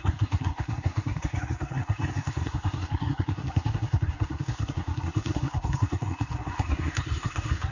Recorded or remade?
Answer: remade